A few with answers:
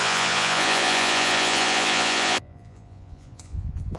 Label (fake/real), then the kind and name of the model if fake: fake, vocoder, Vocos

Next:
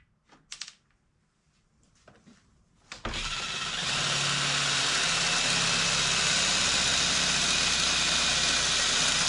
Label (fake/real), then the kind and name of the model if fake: real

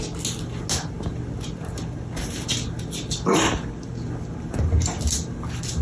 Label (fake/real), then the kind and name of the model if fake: real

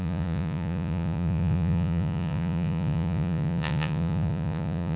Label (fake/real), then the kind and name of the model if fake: fake, vocoder, Vocos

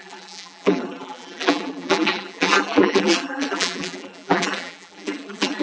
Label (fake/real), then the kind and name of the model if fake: fake, vocoder, BigVGAN v2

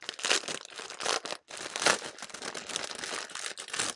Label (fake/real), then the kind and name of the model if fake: real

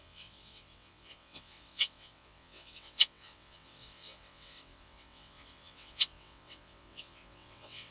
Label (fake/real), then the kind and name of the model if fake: fake, vocoder, WaveNeXt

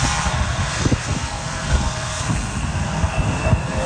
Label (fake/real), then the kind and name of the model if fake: fake, codec, SNAC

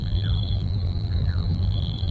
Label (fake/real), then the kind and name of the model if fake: fake, vocoder, BigVGAN v2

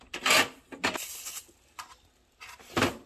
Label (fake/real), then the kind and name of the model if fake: real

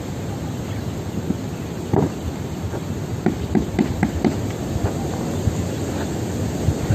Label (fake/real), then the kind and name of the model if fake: real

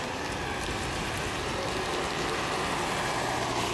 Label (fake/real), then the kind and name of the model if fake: real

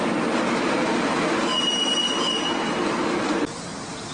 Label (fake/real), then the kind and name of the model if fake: real